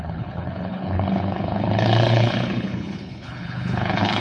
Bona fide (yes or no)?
no